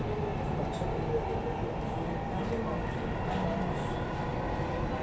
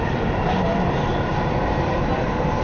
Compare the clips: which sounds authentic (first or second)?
first